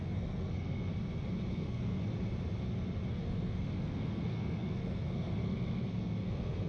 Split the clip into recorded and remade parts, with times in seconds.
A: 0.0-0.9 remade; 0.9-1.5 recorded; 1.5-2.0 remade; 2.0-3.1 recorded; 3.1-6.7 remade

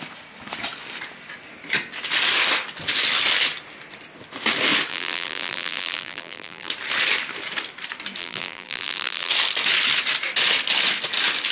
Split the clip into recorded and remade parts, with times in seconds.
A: 0.0-4.9 recorded; 4.9-6.7 remade; 6.7-8.2 recorded; 8.2-9.3 remade; 9.3-11.5 recorded

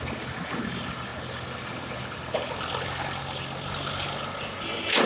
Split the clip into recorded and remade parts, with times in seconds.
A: 0.0-5.1 recorded

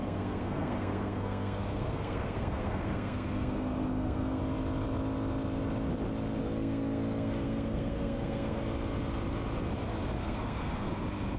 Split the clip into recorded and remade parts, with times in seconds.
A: 0.0-4.4 remade; 4.4-6.4 recorded; 6.4-8.6 remade; 8.6-10.2 recorded; 10.2-11.0 remade; 11.0-11.4 recorded

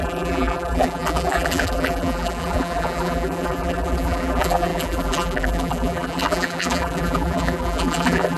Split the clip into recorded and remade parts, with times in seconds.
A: 0.0-8.4 remade

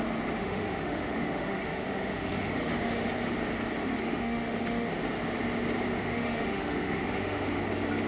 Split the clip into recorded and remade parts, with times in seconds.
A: 0.0-0.4 recorded; 0.4-3.1 remade; 3.1-4.0 recorded; 4.0-4.9 remade; 4.9-6.0 recorded; 6.0-7.6 remade; 7.6-8.1 recorded